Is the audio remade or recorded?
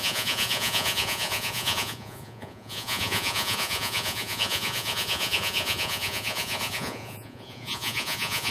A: remade